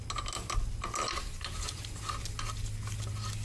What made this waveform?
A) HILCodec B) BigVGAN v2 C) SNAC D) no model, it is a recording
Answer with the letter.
D